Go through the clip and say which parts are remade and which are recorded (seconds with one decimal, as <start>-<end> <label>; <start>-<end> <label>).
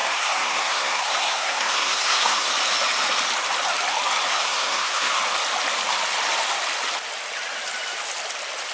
0.0-2.5 remade; 2.5-4.3 recorded; 4.3-5.1 remade; 5.1-8.7 recorded